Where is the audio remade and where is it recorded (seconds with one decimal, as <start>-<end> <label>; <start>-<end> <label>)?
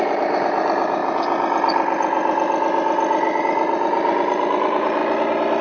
0.0-1.0 remade; 1.0-3.4 recorded; 3.4-5.0 remade; 5.0-5.6 recorded